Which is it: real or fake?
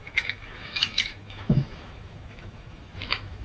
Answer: fake